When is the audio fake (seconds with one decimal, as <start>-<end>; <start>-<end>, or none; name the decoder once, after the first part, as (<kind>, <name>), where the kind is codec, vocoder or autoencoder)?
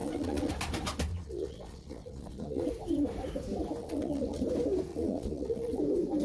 0.0-0.5 (vocoder, Vocos); 1.1-2.7; 3.8-4.4; 4.9-5.8